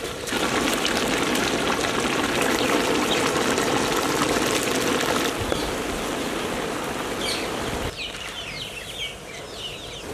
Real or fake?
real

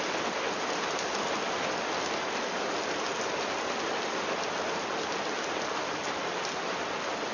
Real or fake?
real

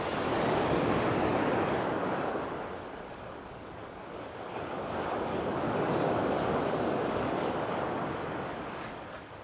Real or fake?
fake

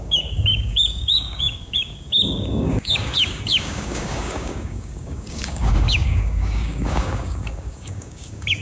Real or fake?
fake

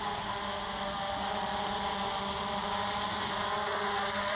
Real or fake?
real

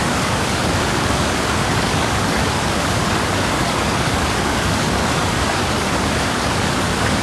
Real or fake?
fake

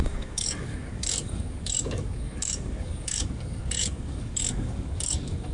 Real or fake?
fake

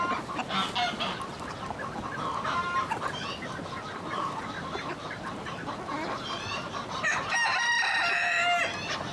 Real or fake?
real